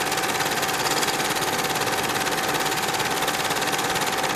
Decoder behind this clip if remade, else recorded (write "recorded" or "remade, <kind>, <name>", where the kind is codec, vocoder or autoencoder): recorded